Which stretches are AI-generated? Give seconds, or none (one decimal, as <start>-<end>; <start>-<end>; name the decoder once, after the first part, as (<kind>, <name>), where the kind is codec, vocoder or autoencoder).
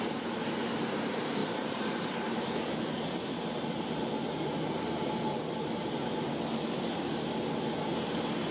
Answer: 1.4-6.3 (vocoder, BigVGAN v2)